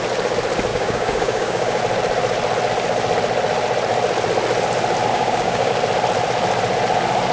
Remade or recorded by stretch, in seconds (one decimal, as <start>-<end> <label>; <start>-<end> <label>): 0.0-0.7 recorded; 0.7-1.8 remade; 1.8-5.1 recorded; 5.1-5.7 remade; 5.7-7.3 recorded